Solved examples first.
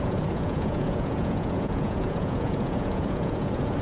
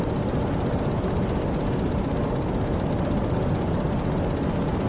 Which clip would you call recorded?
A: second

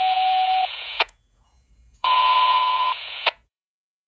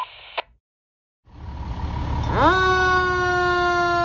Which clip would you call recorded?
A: second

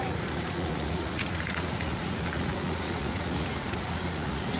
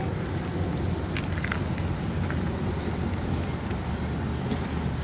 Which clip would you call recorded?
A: second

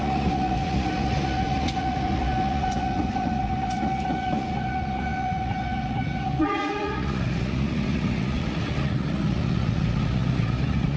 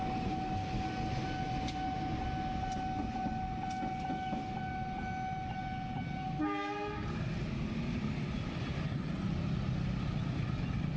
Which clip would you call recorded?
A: second